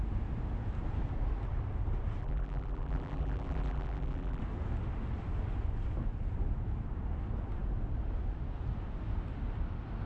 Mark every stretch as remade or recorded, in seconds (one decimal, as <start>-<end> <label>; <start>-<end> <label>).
0.0-2.2 recorded; 2.2-4.4 remade; 4.4-10.1 recorded